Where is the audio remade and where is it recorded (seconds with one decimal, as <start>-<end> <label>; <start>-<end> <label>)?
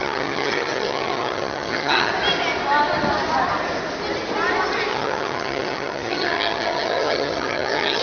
0.0-2.1 remade; 2.1-4.9 recorded; 4.9-8.0 remade